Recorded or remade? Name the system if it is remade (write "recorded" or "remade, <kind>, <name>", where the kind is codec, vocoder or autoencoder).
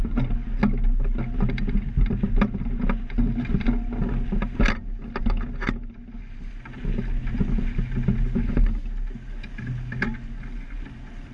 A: recorded